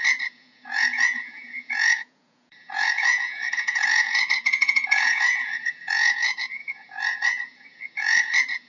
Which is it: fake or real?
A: fake